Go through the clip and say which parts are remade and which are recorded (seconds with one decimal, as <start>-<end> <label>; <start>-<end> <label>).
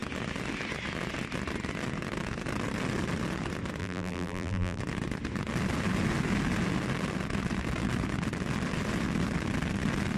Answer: 0.0-3.8 recorded; 3.8-4.8 remade; 4.8-10.2 recorded